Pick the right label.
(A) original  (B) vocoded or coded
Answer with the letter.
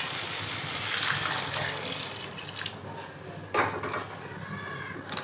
A